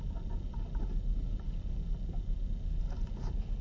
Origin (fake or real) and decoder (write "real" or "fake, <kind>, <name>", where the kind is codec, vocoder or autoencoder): real